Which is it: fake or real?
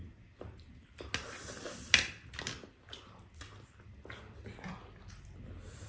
real